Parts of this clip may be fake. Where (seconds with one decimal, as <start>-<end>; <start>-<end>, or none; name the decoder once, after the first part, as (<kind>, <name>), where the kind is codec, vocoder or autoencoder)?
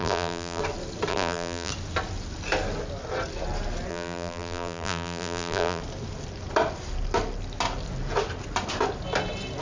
0.0-0.6 (vocoder, BigVGAN v2); 1.1-1.7; 3.9-5.8